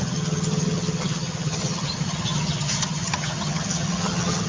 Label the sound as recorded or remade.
remade